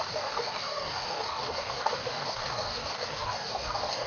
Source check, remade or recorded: remade